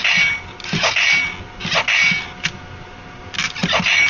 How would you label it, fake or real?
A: real